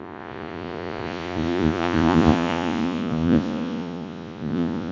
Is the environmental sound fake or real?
fake